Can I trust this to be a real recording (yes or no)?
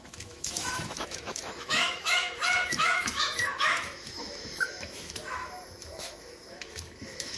no